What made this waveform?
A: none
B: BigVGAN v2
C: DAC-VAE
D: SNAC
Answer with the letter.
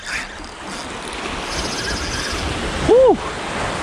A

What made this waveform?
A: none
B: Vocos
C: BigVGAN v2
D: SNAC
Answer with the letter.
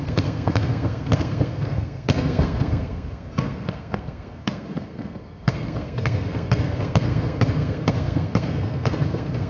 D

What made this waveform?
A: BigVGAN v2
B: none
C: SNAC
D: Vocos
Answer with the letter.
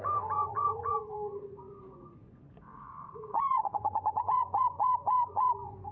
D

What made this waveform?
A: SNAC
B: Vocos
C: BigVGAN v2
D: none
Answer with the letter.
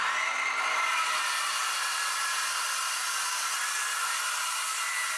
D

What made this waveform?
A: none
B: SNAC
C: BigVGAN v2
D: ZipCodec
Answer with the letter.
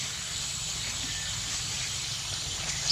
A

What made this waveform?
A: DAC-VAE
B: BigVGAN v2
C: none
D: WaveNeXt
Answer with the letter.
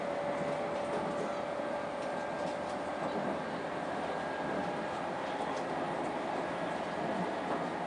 C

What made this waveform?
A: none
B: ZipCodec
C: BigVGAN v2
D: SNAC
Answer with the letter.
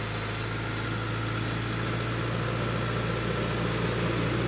A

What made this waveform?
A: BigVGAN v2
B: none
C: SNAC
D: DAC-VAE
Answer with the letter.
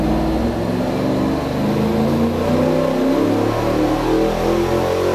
B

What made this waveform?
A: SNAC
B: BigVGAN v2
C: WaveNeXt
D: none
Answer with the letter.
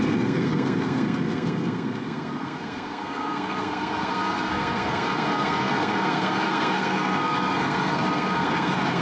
A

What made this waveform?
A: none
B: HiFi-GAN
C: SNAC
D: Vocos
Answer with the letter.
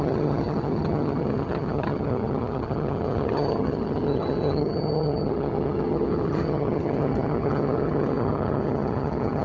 B